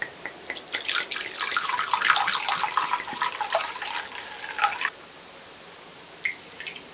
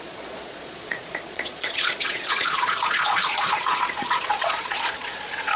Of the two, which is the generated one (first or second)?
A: second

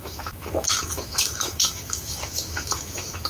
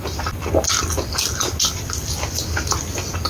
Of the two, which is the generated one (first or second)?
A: first